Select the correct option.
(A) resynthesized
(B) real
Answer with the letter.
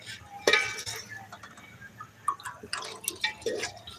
B